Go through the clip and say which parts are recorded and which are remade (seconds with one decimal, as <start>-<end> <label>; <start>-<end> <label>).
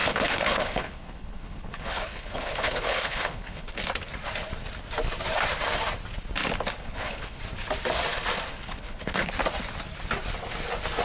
0.0-3.7 remade; 3.7-6.8 recorded; 6.8-7.4 remade; 7.4-8.5 recorded; 8.5-9.3 remade; 9.3-11.0 recorded